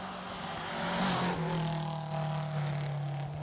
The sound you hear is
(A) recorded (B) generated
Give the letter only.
A